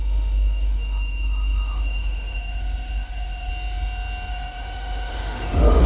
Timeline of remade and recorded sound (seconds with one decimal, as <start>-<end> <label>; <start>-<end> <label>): 0.0-3.5 remade; 3.5-4.3 recorded; 4.3-5.9 remade